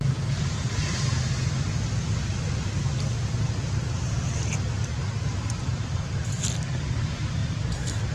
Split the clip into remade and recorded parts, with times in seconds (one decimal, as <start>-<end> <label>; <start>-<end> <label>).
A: 0.0-0.8 remade; 0.8-5.6 recorded; 5.6-8.1 remade